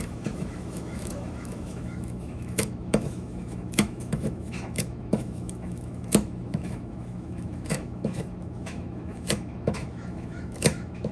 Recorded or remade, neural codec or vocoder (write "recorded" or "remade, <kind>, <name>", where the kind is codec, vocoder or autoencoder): remade, autoencoder, DAC-VAE